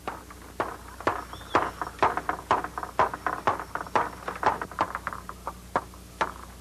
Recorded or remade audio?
recorded